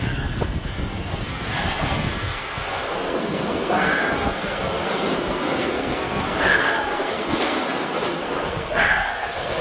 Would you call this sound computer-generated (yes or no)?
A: yes